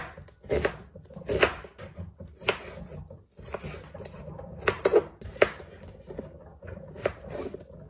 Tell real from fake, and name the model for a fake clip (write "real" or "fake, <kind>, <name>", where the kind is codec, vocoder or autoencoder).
real